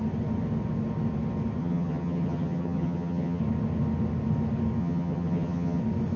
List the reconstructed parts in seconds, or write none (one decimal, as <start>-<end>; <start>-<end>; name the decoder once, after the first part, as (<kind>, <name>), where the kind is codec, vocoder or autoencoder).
1.6-3.4 (vocoder, HiFi-GAN); 4.8-5.8